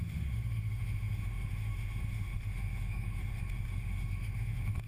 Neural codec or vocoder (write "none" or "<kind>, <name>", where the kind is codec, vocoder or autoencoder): autoencoder, DAC-VAE